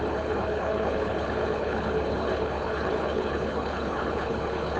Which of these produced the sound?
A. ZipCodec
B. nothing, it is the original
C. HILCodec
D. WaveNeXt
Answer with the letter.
C